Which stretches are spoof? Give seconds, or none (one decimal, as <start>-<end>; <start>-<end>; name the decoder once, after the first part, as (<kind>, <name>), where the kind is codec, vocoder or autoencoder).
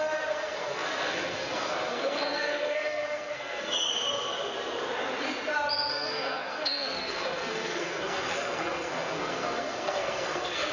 0.0-3.9 (codec, SNAC); 5.9-10.7